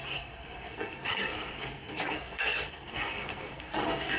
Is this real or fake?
fake